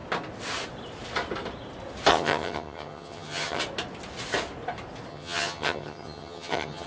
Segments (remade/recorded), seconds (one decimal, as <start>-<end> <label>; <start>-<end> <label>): 0.0-2.1 recorded; 2.1-3.6 remade; 3.6-5.1 recorded; 5.1-6.9 remade